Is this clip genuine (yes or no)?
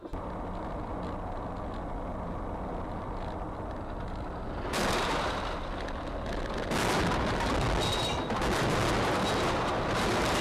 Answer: yes